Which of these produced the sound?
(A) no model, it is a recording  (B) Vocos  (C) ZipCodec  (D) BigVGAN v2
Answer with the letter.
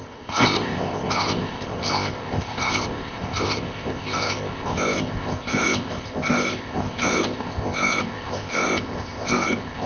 C